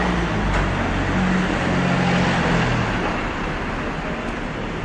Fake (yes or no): no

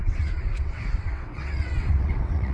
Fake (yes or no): yes